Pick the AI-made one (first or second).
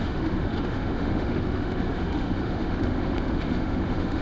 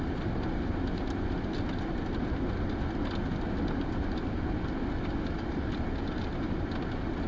first